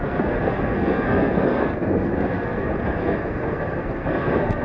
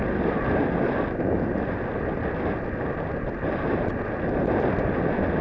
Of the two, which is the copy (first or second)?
first